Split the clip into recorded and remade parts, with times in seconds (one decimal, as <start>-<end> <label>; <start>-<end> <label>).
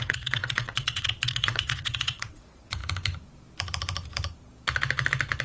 0.0-2.8 remade; 2.8-5.4 recorded